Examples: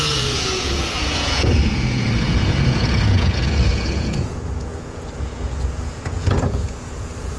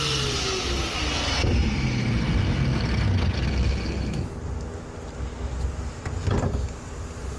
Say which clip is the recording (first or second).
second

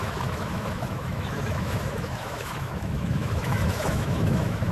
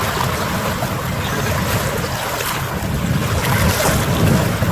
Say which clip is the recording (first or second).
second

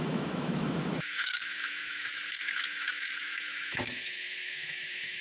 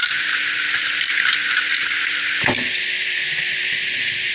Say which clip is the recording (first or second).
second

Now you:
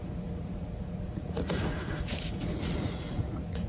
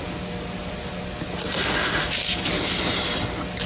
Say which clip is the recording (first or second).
second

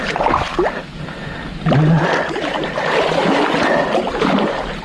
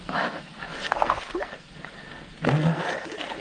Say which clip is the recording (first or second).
first